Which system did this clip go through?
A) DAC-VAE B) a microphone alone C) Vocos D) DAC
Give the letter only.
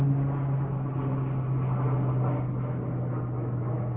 B